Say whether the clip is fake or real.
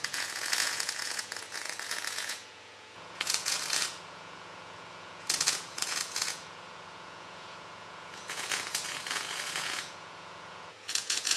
fake